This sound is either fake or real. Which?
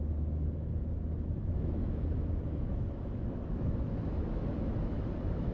fake